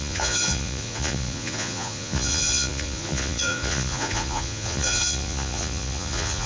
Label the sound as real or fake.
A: fake